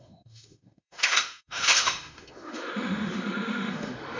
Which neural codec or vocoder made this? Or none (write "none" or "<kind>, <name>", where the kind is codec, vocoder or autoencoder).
autoencoder, DAC-VAE